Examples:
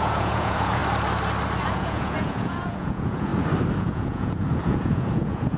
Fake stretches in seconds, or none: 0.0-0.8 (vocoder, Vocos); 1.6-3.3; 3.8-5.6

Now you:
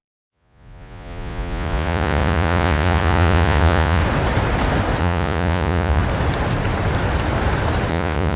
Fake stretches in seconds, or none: 0.0-4.0 (vocoder, Vocos); 5.0-6.0; 7.9-8.4

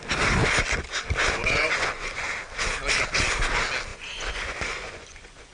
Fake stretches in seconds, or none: 1.4-2.3 (vocoder, Vocos); 3.9-5.5